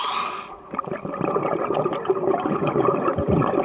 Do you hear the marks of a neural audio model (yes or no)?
no